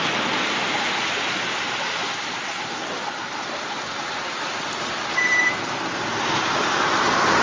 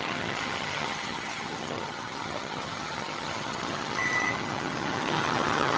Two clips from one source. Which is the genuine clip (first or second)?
first